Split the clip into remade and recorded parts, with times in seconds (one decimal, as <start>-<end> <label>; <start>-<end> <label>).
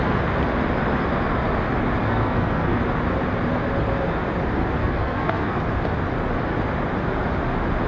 0.0-2.0 recorded; 2.0-2.8 remade; 2.8-4.8 recorded; 4.8-5.6 remade; 5.6-7.9 recorded